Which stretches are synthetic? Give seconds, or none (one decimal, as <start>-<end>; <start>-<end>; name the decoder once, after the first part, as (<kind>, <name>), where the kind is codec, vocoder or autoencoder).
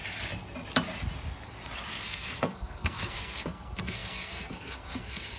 2.0-5.4 (codec, SNAC)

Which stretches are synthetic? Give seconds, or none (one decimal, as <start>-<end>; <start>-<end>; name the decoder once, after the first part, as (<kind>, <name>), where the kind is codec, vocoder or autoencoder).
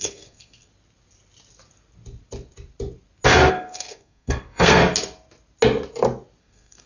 0.0-0.7 (codec, SNAC); 3.5-4.8; 6.4-6.9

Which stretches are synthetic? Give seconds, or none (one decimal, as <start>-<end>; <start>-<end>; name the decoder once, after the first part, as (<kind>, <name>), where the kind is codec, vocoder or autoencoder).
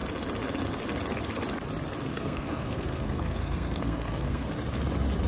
2.1-4.5 (codec, SNAC)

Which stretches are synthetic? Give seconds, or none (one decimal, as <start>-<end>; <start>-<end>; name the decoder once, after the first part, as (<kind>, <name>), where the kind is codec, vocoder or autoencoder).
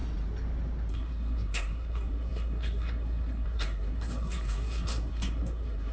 0.9-5.9 (codec, SNAC)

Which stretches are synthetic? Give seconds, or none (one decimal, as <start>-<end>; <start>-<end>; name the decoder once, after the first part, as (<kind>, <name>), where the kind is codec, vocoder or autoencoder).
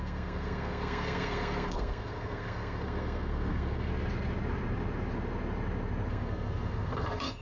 0.0-3.9 (codec, SNAC); 6.1-7.4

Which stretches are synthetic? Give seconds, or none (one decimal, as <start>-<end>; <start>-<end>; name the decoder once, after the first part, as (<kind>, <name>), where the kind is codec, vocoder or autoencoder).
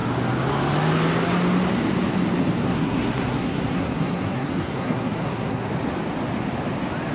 2.6-5.7 (codec, SNAC)